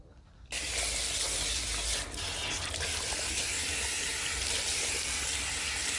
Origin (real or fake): real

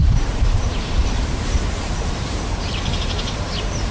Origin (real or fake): fake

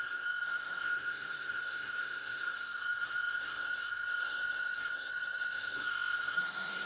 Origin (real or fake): fake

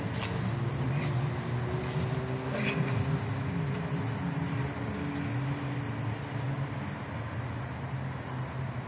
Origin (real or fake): real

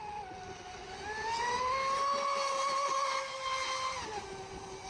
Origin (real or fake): real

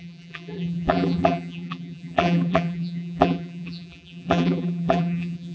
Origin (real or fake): fake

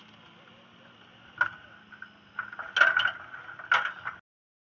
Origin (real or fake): real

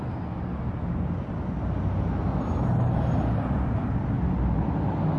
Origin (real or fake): real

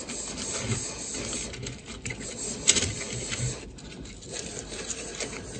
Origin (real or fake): real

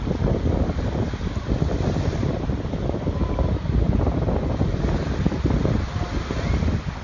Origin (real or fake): real